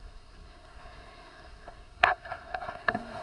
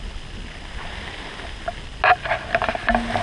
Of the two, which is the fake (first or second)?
first